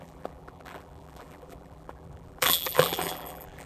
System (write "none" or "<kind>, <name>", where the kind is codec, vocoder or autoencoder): vocoder, BigVGAN v2